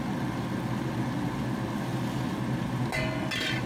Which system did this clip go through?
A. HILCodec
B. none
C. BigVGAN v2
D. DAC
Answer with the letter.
B